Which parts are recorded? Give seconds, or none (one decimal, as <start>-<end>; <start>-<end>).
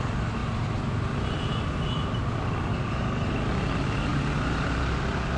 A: 0.0-2.7; 3.3-5.4